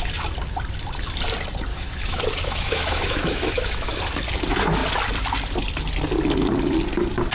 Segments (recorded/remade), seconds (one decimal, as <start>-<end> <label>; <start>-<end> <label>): 0.0-1.7 recorded; 1.7-4.0 remade; 4.0-7.3 recorded